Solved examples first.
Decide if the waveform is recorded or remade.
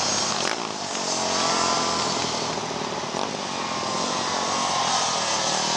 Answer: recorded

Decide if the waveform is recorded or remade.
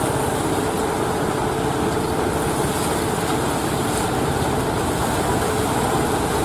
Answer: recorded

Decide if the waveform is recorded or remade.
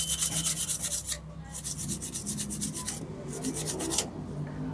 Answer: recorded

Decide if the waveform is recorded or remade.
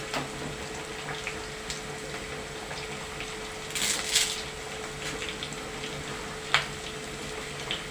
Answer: recorded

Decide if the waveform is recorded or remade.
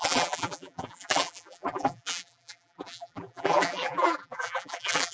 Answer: remade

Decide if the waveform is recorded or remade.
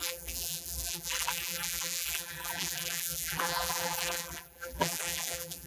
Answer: remade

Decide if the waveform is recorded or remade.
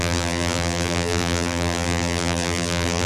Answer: remade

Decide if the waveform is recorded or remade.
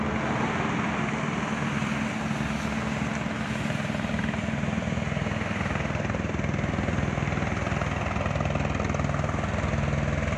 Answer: recorded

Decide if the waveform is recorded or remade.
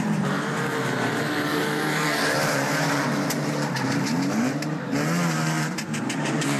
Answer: remade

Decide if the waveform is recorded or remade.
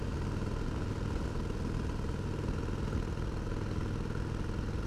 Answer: recorded